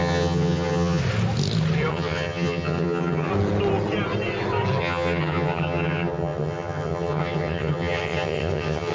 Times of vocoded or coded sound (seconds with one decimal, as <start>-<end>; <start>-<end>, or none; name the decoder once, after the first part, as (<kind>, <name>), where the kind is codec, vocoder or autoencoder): 0.0-1.0 (vocoder, HiFi-GAN); 1.9-3.3; 4.8-8.9